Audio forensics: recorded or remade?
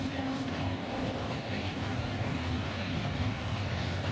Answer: remade